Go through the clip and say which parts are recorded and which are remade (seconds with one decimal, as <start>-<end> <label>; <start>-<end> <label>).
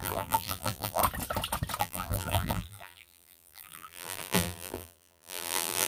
0.0-1.0 remade; 1.0-1.8 recorded; 1.8-5.9 remade